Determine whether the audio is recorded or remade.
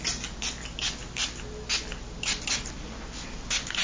recorded